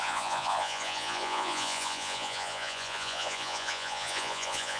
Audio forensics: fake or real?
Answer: fake